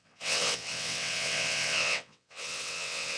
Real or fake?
fake